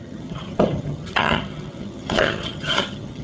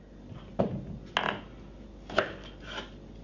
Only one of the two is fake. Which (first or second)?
first